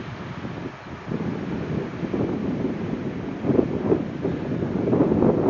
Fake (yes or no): no